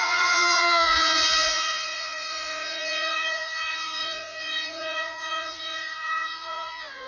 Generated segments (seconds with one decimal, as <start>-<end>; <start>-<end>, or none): 0.0-7.1